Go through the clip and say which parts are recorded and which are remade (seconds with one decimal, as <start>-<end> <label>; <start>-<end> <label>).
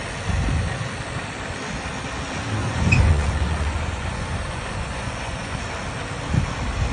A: 0.0-2.6 recorded; 2.6-5.6 remade; 5.6-6.9 recorded